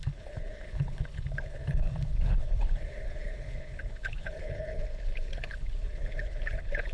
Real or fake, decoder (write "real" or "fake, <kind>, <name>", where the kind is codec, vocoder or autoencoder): fake, codec, HILCodec